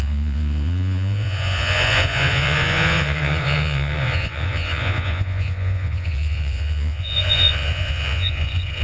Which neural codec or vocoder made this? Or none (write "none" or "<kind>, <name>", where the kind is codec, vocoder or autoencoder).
vocoder, Vocos